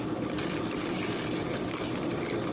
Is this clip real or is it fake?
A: real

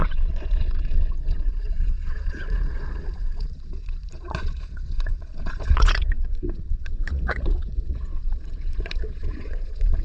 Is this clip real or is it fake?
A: fake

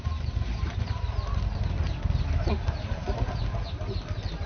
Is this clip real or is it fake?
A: real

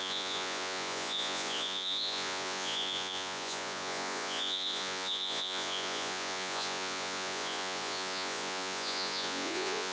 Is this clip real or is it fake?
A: fake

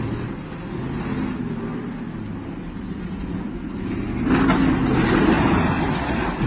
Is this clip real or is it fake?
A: real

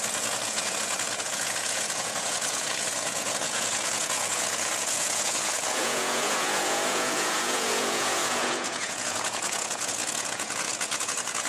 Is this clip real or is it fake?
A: fake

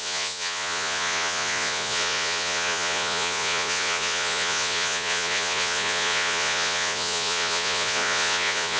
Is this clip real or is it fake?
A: fake